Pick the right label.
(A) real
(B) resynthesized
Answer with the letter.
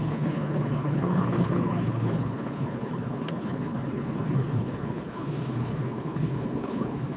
B